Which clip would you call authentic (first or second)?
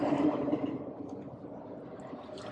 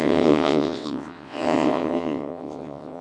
first